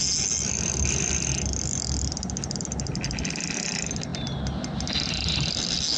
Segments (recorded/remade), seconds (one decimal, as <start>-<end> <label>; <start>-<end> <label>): 0.0-6.0 recorded

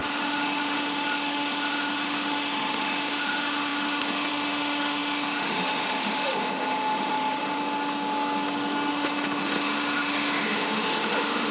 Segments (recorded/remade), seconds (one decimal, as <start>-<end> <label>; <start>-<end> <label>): 0.0-7.6 remade; 7.6-8.9 recorded; 8.9-11.5 remade

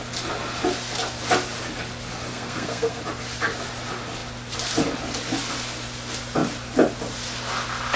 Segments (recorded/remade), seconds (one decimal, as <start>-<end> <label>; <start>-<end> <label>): 0.0-2.3 recorded; 2.3-3.0 remade; 3.0-8.0 recorded

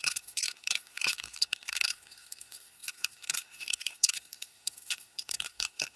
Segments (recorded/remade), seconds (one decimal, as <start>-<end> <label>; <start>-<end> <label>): 0.0-6.0 remade